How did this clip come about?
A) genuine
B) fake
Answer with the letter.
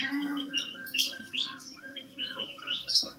B